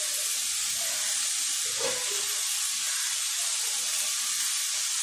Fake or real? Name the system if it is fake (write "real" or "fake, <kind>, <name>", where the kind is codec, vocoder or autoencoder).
real